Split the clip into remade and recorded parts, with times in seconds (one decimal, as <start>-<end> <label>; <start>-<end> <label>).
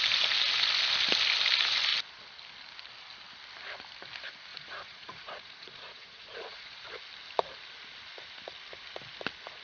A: 0.0-4.5 recorded; 4.5-6.8 remade; 6.8-9.6 recorded